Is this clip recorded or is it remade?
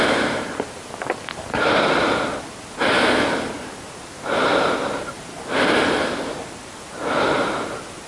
recorded